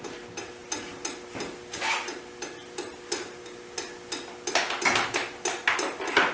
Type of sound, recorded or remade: recorded